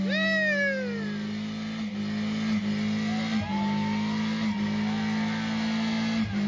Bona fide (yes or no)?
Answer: yes